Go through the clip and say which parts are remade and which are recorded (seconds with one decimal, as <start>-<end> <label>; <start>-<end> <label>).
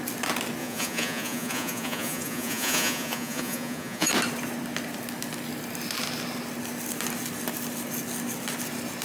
0.0-0.6 recorded; 0.6-4.1 remade; 4.1-9.0 recorded